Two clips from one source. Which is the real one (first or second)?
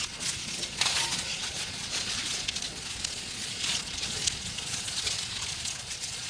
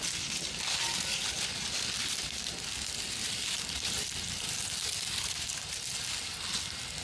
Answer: second